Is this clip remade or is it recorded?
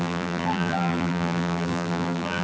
remade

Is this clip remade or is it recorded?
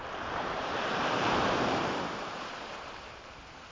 remade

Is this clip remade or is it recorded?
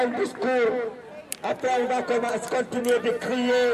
recorded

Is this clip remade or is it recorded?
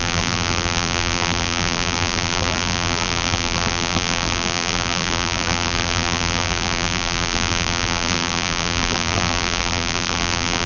remade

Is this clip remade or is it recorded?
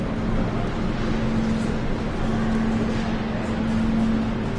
recorded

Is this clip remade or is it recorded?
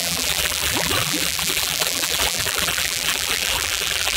remade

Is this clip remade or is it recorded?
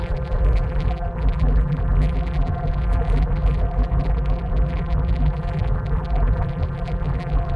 remade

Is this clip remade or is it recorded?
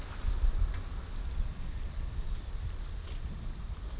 recorded